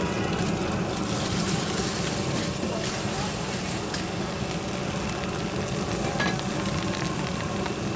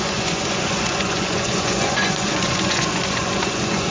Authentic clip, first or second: first